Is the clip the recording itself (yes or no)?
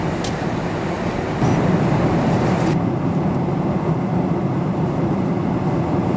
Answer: yes